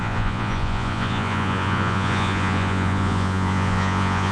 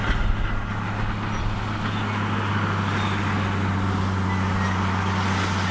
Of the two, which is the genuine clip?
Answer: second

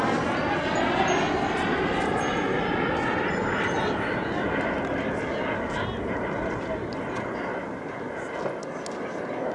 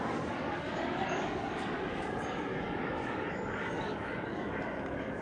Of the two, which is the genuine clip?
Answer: first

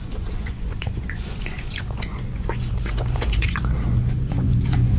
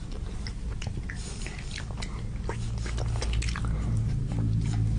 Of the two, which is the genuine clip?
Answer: second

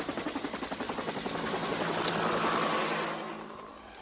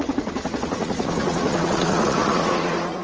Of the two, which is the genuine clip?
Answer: first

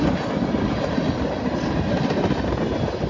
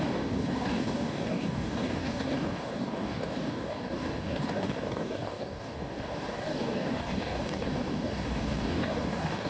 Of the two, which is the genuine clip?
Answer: first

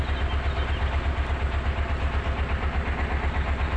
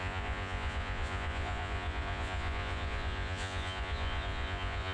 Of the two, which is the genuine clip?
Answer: first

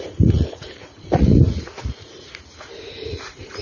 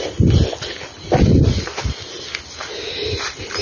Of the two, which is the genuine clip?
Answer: second